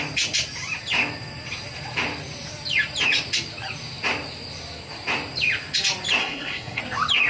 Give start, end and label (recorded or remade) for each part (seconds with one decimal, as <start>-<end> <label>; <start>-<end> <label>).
0.0-6.2 recorded; 6.2-6.8 remade; 6.8-7.3 recorded